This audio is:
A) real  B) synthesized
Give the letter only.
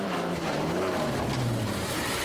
B